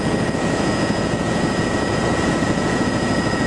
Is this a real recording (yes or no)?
no